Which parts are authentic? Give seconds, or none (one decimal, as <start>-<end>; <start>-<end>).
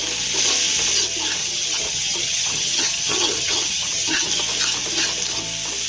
0.0-1.4; 4.3-5.9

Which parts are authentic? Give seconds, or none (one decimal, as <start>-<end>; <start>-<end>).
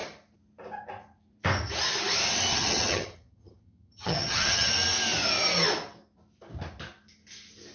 0.0-2.5; 4.7-7.7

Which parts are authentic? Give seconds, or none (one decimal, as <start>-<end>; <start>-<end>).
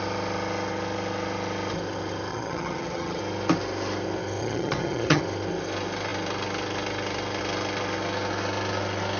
0.0-2.3; 3.2-4.4; 5.2-9.2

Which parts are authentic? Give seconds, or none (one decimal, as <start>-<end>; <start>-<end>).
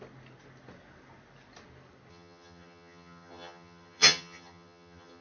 0.0-2.1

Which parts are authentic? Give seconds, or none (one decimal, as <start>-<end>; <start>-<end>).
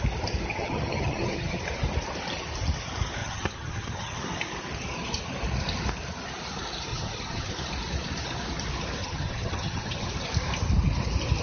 0.0-0.5; 1.6-3.2; 4.2-6.9; 7.5-9.0; 10.1-11.4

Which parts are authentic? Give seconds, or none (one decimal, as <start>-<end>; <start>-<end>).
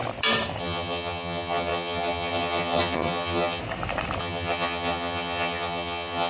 0.0-0.6; 3.6-4.2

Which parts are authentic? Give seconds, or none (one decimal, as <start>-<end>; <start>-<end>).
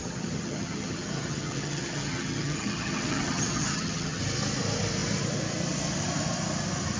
4.2-7.0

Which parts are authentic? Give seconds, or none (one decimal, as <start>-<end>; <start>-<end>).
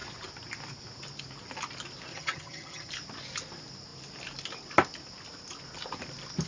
0.0-2.1; 2.9-6.5